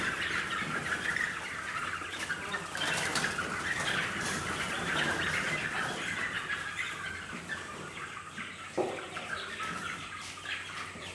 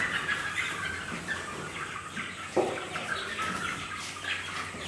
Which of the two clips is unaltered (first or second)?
second